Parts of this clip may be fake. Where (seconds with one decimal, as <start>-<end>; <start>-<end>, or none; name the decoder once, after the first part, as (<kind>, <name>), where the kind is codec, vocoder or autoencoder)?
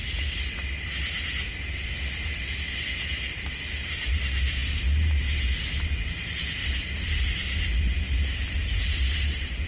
6.6-7.2 (vocoder, BigVGAN v2)